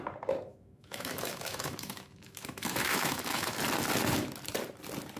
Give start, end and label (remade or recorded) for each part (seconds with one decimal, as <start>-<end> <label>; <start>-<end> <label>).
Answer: 0.0-0.5 recorded; 0.5-3.6 remade; 3.6-5.2 recorded